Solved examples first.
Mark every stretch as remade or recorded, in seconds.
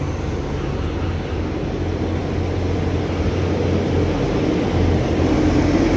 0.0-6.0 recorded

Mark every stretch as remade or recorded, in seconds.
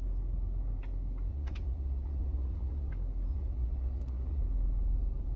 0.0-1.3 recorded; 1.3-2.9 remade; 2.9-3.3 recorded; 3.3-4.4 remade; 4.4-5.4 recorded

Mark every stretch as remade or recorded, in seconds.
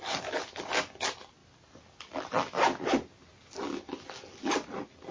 0.0-5.1 recorded